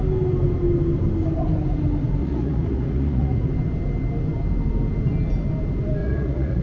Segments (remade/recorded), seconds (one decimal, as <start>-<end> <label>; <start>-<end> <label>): 0.0-2.2 recorded; 2.2-3.5 remade; 3.5-6.0 recorded; 6.0-6.6 remade